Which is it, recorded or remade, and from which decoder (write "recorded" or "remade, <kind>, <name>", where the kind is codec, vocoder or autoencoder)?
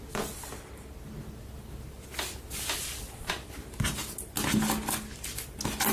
recorded